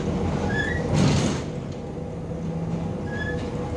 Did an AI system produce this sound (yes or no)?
no